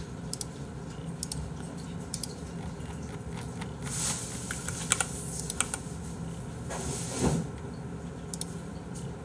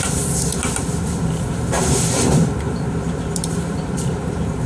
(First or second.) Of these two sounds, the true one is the first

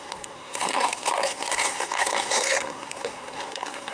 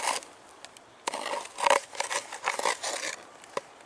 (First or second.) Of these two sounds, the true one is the second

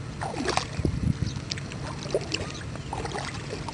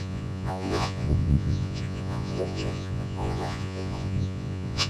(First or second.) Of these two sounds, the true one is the first